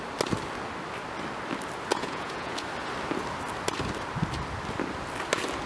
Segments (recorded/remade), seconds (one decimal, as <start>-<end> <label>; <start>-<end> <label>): 0.0-1.9 recorded; 1.9-2.5 remade; 2.5-5.7 recorded